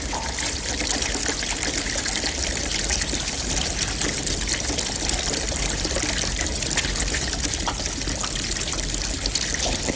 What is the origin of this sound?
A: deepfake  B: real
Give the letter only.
B